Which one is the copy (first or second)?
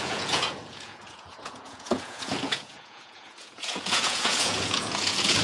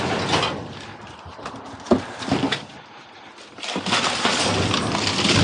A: first